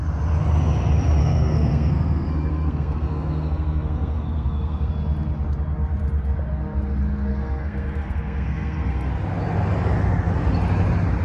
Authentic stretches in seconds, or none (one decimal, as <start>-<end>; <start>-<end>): 0.0-1.2; 4.9-7.3; 9.1-11.2